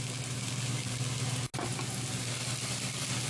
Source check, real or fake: real